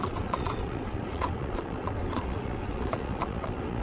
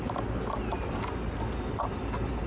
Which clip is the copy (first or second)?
first